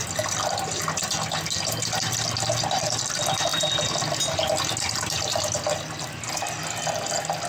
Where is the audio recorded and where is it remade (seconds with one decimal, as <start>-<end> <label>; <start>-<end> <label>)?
0.0-7.5 recorded

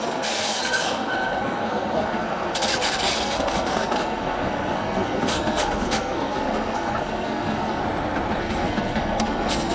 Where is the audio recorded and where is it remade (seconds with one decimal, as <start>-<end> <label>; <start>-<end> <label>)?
0.0-7.8 remade; 7.8-8.4 recorded; 8.4-9.7 remade

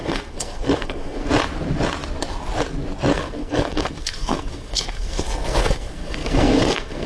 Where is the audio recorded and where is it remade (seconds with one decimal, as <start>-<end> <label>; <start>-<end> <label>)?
0.0-1.3 remade; 1.3-3.1 recorded; 3.1-7.1 remade